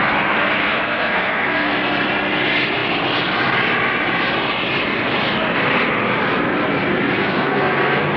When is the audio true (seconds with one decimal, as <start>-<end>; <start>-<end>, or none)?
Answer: 0.0-0.6; 1.7-7.2